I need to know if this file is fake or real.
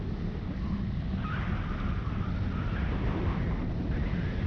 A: real